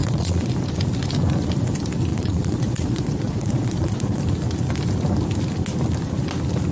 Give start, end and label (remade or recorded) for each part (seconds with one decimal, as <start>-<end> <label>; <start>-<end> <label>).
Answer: 0.0-0.5 remade; 0.5-2.1 recorded; 2.1-4.2 remade; 4.2-6.7 recorded